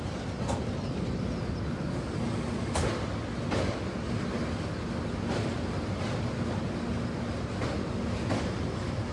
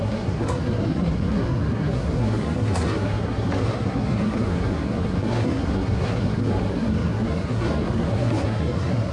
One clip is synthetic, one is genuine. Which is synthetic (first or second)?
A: second